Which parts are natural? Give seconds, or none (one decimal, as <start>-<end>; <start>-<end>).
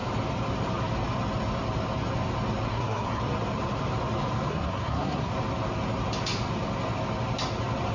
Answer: 0.0-2.7; 3.2-4.5; 5.3-7.9